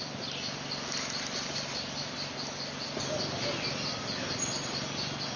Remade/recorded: recorded